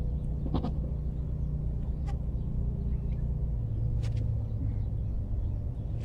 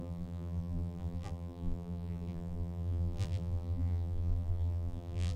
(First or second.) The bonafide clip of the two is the first